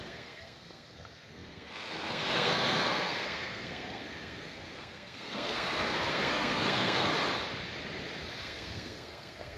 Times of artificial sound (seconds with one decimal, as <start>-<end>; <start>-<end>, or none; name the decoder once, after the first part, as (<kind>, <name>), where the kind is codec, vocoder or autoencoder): 0.0-7.1 (codec, SNAC); 8.4-9.6